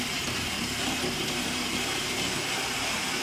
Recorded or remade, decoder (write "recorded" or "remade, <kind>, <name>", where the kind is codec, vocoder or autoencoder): recorded